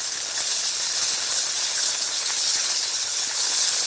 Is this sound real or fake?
fake